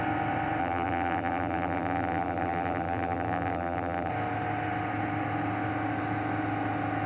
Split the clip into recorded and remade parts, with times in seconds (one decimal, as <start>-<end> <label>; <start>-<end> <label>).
0.0-0.6 recorded; 0.6-4.1 remade; 4.1-7.1 recorded